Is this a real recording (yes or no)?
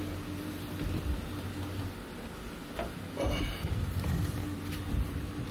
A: yes